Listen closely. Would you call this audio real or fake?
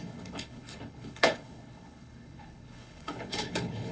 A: fake